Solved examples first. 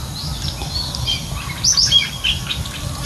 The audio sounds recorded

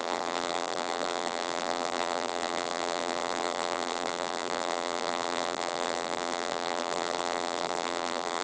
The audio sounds remade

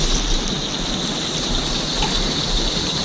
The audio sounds recorded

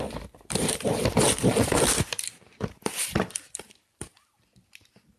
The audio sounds remade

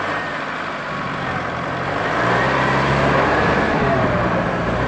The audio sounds remade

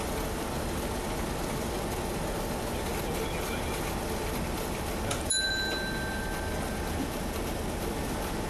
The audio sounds recorded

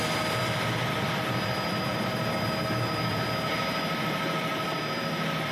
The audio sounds remade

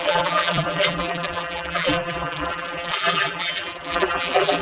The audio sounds remade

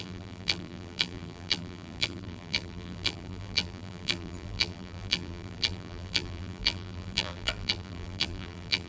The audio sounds remade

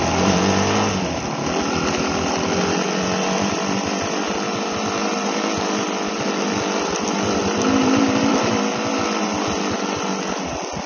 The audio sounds remade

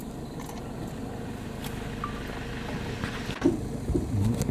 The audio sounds recorded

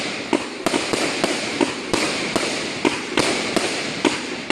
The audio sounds remade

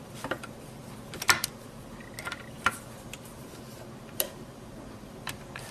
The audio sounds remade